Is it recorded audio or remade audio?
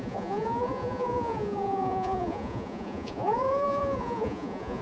remade